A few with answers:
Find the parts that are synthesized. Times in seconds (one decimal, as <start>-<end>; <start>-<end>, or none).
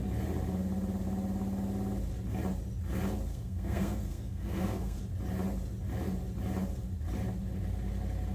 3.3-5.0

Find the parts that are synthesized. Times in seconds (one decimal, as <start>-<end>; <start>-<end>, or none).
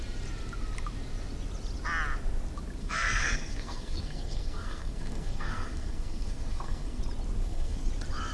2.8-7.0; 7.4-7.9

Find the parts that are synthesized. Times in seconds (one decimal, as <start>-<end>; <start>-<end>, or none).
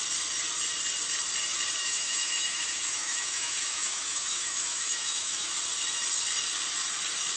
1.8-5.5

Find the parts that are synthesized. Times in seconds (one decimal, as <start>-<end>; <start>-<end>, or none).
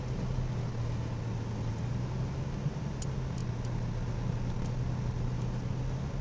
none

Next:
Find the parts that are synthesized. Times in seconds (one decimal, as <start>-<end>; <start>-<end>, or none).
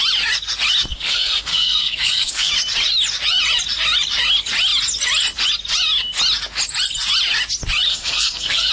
0.9-2.5; 7.9-8.7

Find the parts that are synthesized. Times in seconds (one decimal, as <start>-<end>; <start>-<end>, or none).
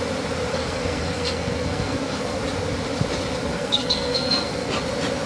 0.5-2.4; 3.5-4.7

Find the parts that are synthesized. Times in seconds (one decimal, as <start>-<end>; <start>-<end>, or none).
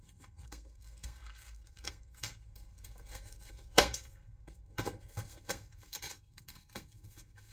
0.0-7.5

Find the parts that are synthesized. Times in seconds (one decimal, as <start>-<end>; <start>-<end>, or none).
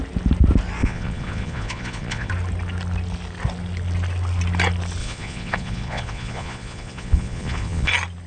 0.8-2.3; 5.0-7.9